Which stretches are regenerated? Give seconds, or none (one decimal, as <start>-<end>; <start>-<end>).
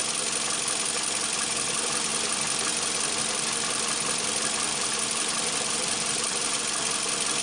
4.7-6.6